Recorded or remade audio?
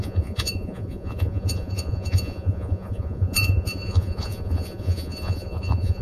remade